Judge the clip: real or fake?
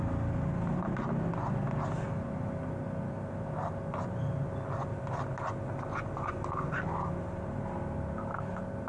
real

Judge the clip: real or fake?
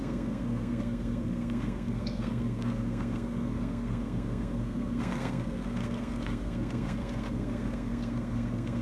fake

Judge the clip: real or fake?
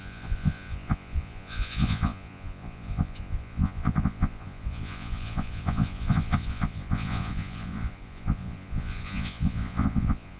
fake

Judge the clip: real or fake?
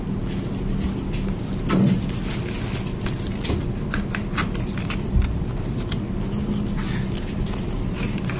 real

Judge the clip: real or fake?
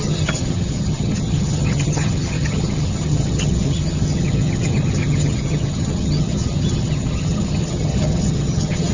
fake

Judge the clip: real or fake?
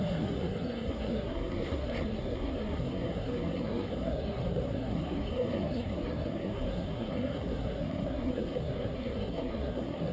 fake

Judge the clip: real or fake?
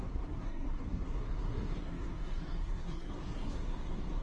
fake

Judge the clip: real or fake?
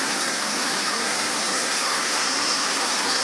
fake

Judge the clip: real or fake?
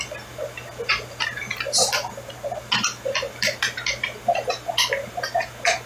real